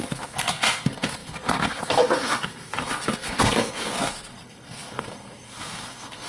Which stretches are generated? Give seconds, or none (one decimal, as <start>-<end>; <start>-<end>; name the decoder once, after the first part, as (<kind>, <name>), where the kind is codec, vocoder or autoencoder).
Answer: 0.0-6.3 (codec, SNAC)